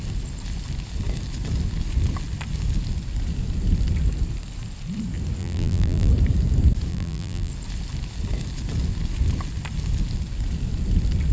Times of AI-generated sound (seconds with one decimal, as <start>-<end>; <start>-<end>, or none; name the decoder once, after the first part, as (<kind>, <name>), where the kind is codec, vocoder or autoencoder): 5.4-6.1 (vocoder, BigVGAN v2); 6.9-7.5